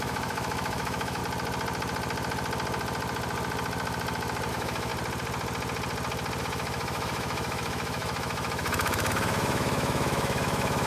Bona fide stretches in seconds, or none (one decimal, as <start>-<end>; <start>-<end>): 1.2-4.5; 4.9-6.4